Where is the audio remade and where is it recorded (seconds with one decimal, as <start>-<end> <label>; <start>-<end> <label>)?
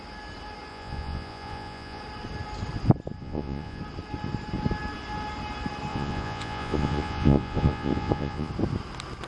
0.0-0.7 recorded; 0.7-2.0 remade; 2.0-3.2 recorded; 3.2-3.8 remade; 3.8-5.9 recorded; 5.9-8.5 remade; 8.5-9.3 recorded